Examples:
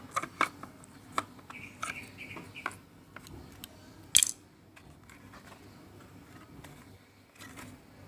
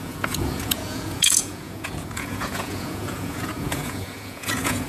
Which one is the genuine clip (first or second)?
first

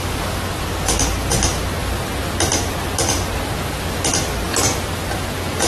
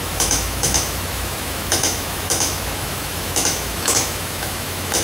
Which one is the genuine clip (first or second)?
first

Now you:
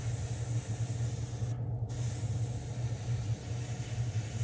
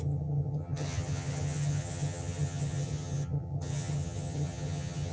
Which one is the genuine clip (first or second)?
first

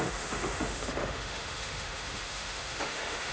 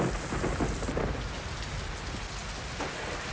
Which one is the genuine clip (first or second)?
second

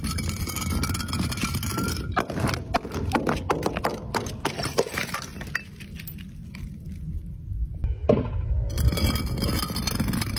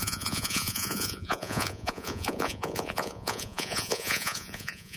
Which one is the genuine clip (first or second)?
first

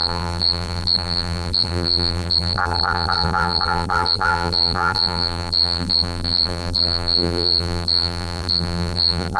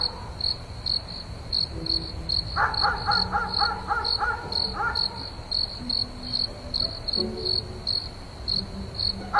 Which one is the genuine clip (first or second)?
second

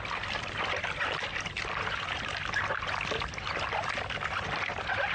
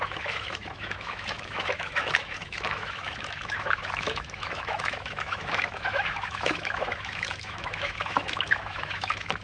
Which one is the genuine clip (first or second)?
first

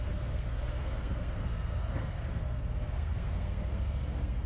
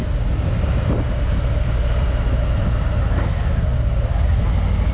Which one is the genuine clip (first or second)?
second